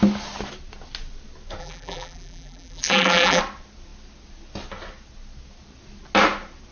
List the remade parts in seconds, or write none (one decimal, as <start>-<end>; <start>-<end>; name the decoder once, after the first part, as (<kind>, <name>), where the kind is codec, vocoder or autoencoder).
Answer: 1.6-3.4 (vocoder, BigVGAN v2)